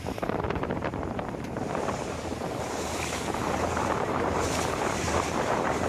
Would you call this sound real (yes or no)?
no